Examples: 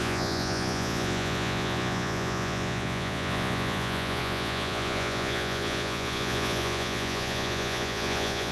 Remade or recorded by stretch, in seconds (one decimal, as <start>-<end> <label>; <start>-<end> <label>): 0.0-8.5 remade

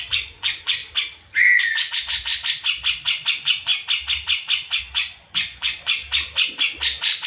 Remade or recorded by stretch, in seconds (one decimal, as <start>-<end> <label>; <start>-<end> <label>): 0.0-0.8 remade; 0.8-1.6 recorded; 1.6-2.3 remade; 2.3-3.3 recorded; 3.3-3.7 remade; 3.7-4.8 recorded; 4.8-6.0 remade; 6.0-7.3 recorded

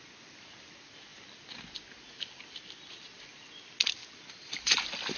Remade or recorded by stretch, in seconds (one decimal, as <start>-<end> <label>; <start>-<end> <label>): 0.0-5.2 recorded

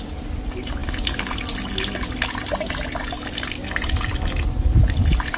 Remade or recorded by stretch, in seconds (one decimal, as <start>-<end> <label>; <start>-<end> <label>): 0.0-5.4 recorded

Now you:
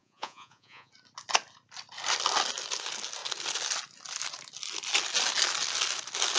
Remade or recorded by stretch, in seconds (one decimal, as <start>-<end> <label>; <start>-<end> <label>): 0.0-0.9 remade; 0.9-6.4 recorded

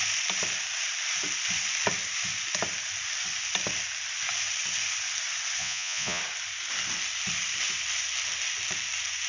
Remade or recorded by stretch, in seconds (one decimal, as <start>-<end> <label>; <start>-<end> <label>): 0.0-5.6 recorded; 5.6-6.2 remade; 6.2-9.3 recorded

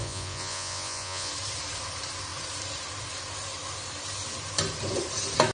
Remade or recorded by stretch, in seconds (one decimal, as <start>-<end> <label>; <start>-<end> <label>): 0.0-1.3 remade; 1.3-5.5 recorded